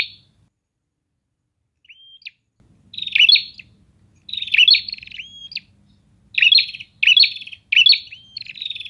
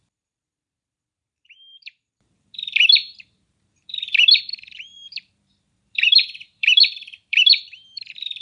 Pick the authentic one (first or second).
first